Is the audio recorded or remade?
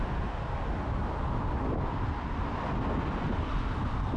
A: recorded